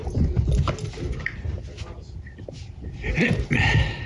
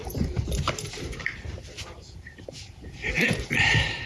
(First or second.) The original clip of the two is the first